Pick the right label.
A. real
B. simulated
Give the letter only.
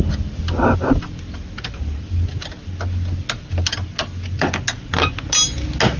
A